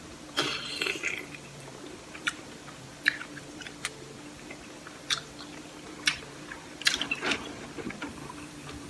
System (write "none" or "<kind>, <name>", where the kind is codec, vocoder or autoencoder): vocoder, BigVGAN v2